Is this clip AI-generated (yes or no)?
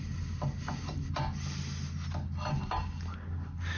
no